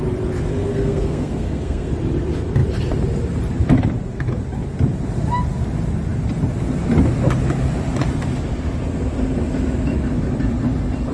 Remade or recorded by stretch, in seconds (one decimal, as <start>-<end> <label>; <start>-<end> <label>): 0.0-0.7 recorded; 0.7-1.9 remade; 1.9-11.1 recorded